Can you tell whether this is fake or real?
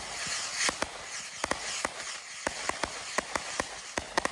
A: real